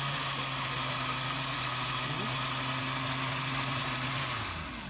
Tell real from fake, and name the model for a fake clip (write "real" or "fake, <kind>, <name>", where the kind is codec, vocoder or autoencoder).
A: real